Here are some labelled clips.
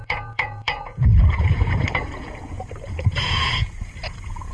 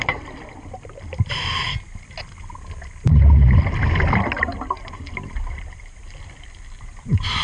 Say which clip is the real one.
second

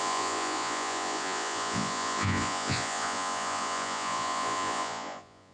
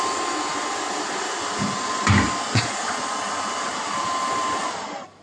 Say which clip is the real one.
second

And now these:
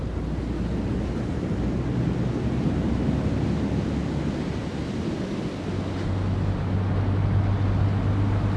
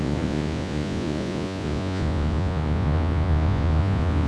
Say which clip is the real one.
first